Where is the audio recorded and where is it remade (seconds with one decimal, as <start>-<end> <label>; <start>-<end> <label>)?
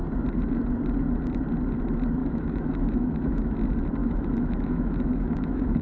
0.0-2.2 recorded; 2.2-3.5 remade; 3.5-4.0 recorded; 4.0-5.8 remade